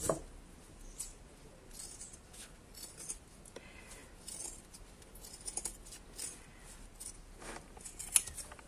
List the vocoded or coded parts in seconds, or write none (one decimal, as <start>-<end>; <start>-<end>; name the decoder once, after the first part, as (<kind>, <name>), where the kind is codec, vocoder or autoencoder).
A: none